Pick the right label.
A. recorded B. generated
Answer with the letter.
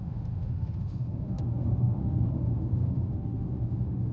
B